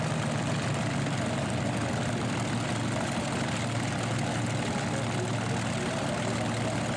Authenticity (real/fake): real